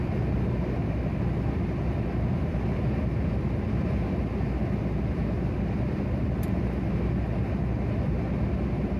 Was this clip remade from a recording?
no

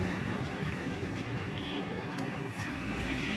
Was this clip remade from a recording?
yes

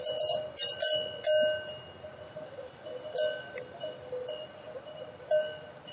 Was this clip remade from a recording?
no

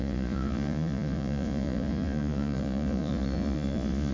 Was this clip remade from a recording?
yes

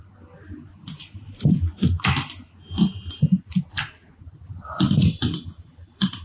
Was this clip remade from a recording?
no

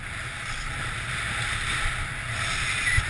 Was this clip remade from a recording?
no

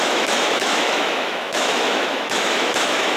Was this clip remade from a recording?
yes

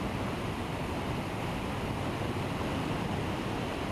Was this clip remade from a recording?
no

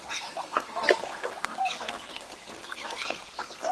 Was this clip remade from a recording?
yes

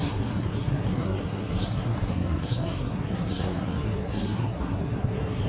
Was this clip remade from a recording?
yes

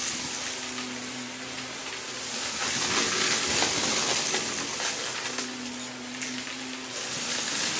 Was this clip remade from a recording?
no